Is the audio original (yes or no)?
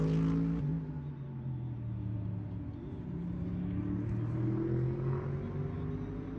yes